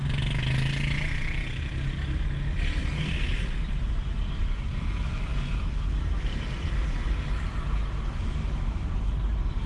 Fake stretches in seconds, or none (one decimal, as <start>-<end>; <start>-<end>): 2.8-3.4